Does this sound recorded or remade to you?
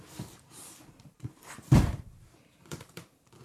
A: remade